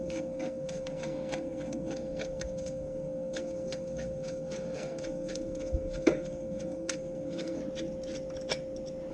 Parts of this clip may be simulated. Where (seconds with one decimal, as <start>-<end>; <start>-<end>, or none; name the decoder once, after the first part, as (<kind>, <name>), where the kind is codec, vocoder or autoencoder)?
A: 0.0-7.6 (codec, SNAC)